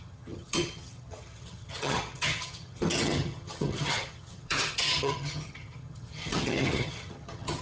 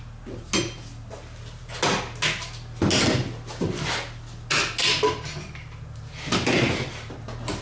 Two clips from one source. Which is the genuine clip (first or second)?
second